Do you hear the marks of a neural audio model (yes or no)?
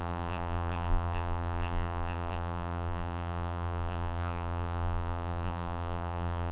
yes